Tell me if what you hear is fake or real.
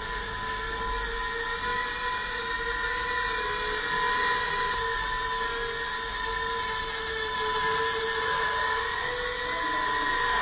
real